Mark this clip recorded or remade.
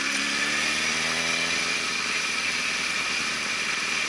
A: recorded